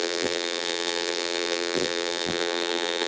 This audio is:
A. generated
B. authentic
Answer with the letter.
A